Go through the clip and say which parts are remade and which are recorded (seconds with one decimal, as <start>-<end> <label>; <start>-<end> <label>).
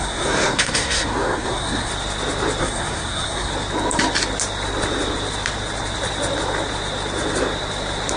0.0-1.9 remade; 1.9-2.6 recorded; 2.6-3.5 remade; 3.5-8.2 recorded